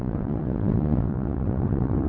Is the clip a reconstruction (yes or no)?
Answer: yes